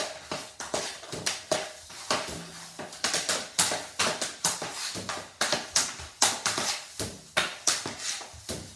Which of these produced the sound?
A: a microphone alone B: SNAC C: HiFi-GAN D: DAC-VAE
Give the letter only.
A